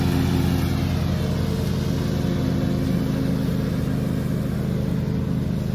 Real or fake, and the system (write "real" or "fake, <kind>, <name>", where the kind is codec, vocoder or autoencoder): real